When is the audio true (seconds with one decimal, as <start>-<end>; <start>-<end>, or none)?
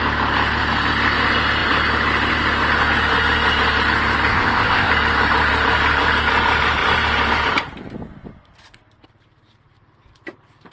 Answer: 0.0-4.3; 4.9-10.7